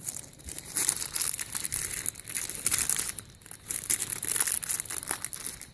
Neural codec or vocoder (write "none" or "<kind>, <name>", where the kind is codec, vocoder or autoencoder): none